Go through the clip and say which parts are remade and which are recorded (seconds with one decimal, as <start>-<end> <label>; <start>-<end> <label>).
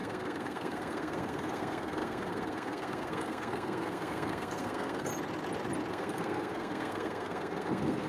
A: 0.0-5.1 remade; 5.1-5.9 recorded; 5.9-8.1 remade